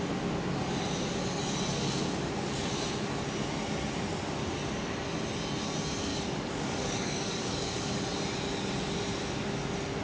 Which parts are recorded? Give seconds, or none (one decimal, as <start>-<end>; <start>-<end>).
0.0-6.1; 8.0-10.0